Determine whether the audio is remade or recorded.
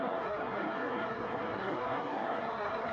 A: remade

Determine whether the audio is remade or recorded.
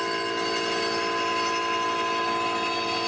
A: recorded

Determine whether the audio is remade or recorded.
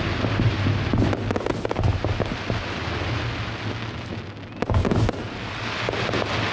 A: recorded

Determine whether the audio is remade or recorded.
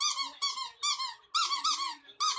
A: recorded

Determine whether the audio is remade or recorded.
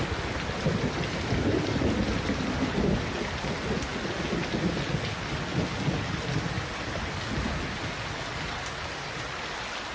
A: recorded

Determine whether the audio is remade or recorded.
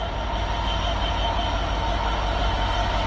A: recorded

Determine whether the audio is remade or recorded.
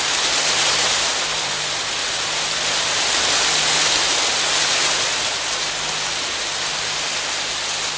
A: recorded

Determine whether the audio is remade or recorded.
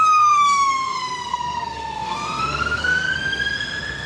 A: remade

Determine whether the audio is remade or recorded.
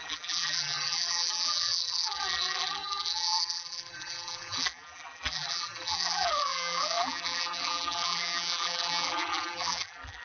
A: remade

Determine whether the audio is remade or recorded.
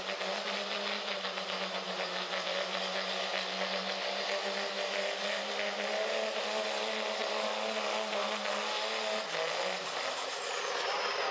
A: recorded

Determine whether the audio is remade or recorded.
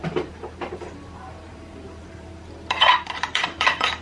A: remade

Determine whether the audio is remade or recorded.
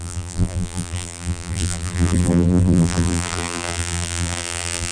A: remade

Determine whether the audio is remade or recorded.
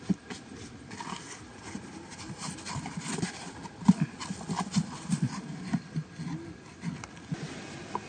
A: recorded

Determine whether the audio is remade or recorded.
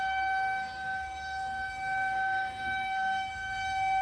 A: remade